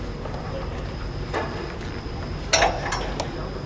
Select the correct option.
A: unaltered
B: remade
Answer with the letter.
A